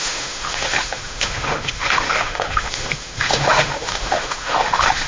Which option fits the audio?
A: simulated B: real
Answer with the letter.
A